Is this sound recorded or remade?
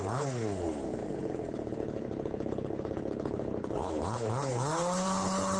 remade